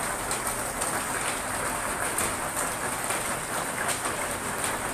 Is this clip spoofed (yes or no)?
no